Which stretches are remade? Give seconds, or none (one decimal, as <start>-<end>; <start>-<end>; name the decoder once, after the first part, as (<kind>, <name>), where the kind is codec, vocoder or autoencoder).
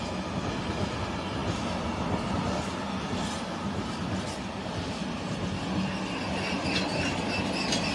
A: none